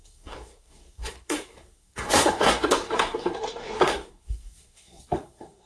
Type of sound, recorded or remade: remade